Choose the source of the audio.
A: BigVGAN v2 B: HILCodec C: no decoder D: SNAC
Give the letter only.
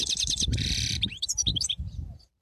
A